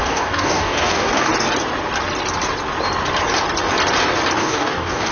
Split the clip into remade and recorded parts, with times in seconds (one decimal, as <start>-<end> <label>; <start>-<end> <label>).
0.0-1.3 remade; 1.3-4.4 recorded; 4.4-5.1 remade